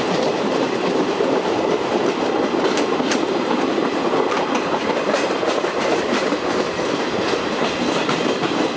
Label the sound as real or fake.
fake